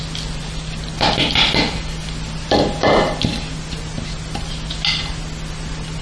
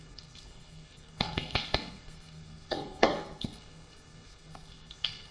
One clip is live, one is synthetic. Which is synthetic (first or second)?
second